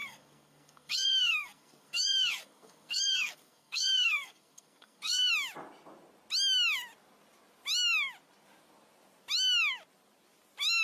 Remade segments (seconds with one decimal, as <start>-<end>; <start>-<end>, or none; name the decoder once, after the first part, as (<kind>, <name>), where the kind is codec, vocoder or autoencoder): 0.0-5.3 (codec, SNAC)